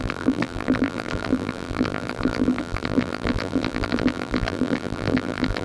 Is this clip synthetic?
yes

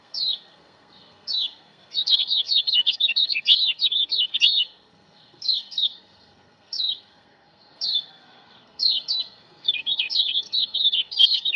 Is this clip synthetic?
yes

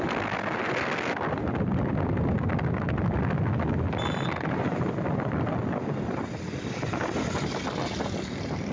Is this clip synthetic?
no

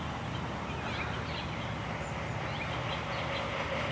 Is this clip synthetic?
no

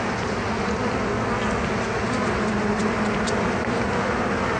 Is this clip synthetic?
no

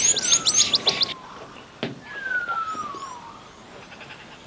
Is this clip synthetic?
no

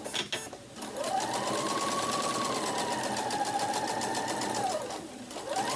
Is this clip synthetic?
no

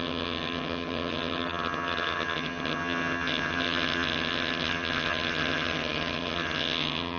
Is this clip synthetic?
yes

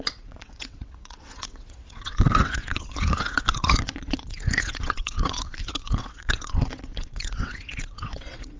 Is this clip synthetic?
yes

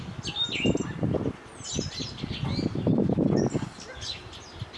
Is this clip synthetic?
no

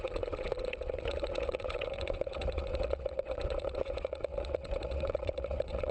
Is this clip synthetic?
yes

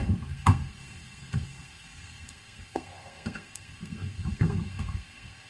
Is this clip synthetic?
yes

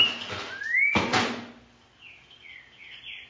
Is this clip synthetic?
no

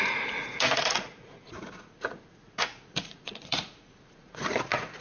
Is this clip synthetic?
yes